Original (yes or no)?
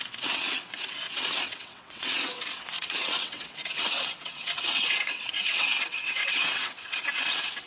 no